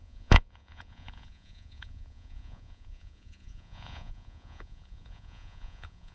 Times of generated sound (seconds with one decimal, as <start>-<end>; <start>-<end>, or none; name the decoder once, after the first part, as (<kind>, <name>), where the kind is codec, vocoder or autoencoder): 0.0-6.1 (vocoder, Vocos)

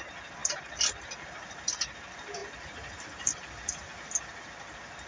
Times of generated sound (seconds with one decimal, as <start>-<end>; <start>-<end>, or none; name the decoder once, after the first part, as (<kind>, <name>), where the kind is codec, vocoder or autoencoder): none

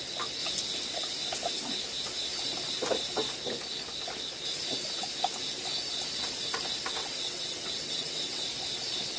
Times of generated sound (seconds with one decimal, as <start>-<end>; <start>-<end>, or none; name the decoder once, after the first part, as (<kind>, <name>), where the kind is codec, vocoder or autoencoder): 7.0-8.4 (vocoder, WaveNeXt)

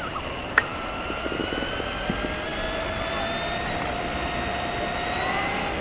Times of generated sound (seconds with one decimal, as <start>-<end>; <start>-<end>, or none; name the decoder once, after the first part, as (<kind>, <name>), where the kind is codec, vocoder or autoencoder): none

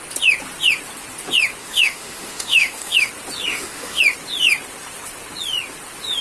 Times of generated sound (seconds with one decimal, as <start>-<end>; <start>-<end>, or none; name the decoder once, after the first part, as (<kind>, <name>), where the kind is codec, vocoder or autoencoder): 1.6-3.1 (autoencoder, DAC-VAE); 3.5-4.0